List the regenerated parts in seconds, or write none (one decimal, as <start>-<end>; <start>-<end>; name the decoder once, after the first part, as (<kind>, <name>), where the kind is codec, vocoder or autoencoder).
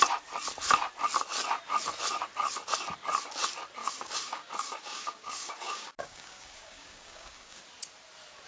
3.8-7.6 (codec, DAC)